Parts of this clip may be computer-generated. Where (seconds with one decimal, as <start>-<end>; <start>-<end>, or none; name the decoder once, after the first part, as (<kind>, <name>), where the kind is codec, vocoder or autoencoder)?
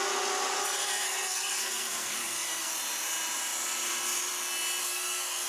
0.6-2.7 (codec, SNAC); 4.8-5.5